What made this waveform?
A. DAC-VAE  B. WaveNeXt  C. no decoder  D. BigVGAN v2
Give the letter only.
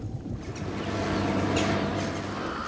C